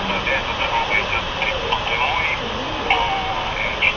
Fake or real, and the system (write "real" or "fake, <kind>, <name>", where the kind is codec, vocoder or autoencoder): real